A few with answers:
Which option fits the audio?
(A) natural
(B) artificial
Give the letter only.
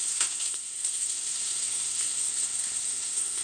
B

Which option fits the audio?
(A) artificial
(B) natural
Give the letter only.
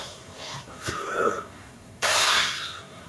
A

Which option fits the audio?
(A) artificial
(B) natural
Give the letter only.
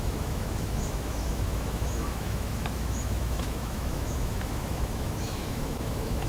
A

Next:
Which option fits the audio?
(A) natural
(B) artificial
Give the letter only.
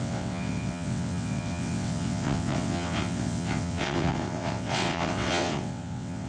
B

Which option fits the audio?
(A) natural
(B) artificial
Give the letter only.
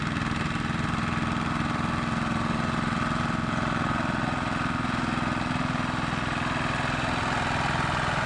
A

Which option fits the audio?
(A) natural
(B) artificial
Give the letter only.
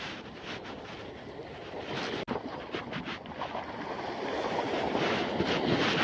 A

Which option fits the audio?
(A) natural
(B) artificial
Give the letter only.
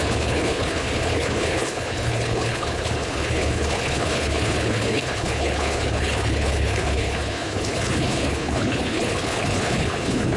B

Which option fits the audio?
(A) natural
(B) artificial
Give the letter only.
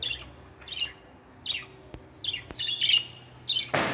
A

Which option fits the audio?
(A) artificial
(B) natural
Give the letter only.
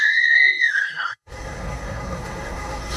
A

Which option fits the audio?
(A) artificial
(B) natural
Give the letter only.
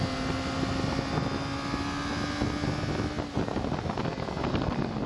B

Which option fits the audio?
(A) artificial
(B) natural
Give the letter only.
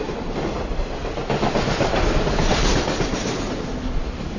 B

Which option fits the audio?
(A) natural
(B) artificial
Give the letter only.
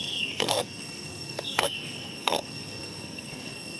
B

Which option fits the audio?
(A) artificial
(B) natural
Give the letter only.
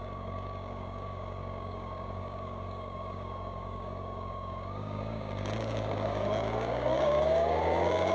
A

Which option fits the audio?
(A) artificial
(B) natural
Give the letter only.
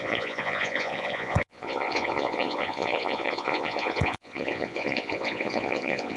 A